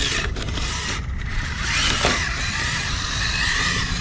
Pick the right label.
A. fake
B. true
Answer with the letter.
A